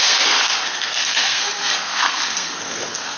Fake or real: fake